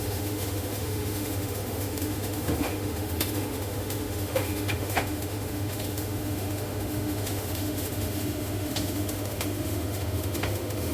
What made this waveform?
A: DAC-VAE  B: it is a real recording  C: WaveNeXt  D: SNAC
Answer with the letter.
A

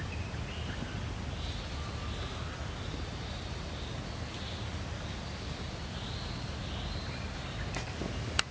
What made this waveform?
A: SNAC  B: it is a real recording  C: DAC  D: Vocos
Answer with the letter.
B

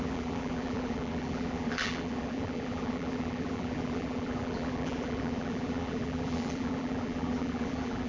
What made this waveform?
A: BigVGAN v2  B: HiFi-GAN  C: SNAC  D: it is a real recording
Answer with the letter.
A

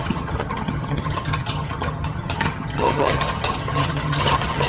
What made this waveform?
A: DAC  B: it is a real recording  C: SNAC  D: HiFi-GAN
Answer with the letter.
D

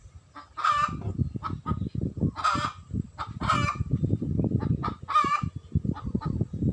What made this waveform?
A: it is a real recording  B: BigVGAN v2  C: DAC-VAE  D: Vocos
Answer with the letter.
A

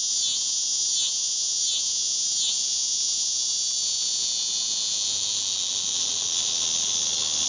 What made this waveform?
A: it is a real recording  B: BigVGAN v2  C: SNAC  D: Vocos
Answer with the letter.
A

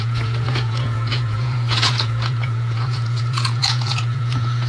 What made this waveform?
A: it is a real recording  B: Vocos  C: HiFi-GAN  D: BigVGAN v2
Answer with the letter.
B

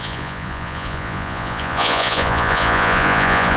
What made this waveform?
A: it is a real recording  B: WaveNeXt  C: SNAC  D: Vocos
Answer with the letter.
D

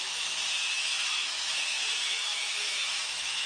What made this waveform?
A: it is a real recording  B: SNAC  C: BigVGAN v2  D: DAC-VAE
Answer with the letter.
D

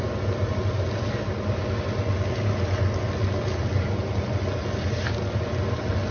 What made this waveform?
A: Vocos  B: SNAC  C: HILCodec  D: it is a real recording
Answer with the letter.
D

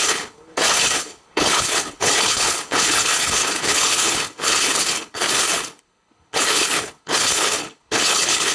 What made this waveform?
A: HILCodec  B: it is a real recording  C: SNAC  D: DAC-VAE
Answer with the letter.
A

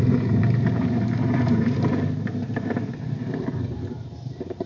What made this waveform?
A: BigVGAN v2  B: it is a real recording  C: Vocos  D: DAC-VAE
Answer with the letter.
A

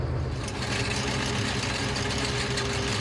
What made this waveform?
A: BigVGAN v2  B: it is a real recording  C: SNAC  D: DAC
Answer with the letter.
B